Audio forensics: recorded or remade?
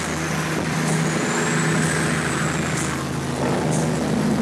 recorded